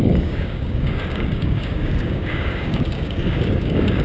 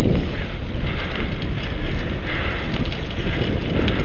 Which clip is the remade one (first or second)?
first